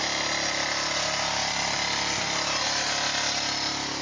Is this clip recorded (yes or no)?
yes